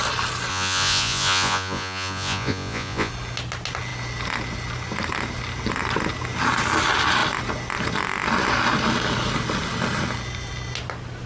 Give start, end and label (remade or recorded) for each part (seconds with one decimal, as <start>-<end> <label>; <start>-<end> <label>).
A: 0.0-0.5 recorded; 0.5-3.1 remade; 3.1-11.3 recorded